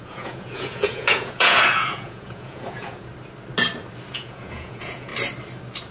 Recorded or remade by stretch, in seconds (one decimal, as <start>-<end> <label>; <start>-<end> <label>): 0.0-3.1 remade; 3.1-4.1 recorded; 4.1-5.1 remade; 5.1-5.9 recorded